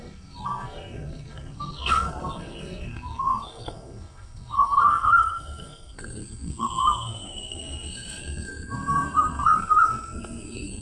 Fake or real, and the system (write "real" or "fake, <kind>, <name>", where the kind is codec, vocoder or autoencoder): fake, codec, SNAC